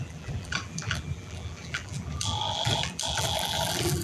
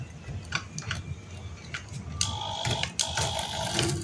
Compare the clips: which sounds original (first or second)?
second